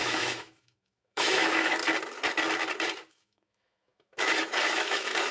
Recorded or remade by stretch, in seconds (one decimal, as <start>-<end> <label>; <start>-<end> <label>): 0.0-1.8 remade; 1.8-3.1 recorded; 3.1-5.3 remade